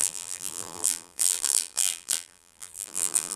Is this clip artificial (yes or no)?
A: yes